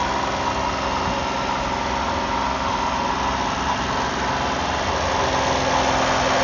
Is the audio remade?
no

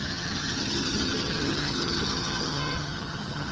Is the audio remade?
yes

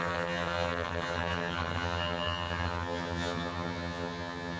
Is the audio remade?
yes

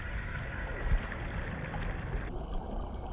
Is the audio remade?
no